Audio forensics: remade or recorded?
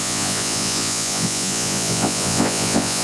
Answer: remade